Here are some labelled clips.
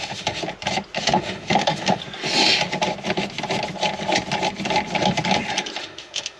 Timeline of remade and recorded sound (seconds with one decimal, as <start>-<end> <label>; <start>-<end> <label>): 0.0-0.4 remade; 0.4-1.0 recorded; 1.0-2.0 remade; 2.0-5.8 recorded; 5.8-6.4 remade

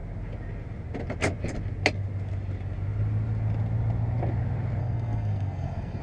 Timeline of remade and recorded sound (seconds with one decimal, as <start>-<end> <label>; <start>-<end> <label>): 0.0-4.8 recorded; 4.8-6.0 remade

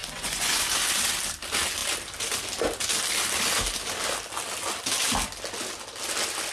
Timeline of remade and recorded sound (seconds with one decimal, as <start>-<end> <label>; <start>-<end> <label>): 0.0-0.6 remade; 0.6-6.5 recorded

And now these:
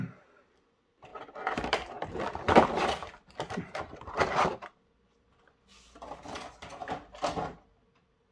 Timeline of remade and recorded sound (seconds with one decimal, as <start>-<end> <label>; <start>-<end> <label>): 0.0-8.3 recorded

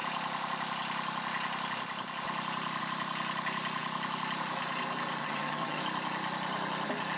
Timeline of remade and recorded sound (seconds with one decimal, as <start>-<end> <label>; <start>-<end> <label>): 0.0-5.2 recorded; 5.2-5.8 remade; 5.8-7.2 recorded

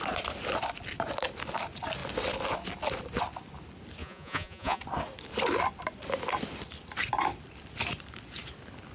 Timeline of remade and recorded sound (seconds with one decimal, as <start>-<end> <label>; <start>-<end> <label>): 0.0-4.0 recorded; 4.0-4.8 remade; 4.8-8.9 recorded